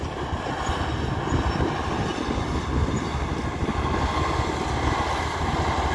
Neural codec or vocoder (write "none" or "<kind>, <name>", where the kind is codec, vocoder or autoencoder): none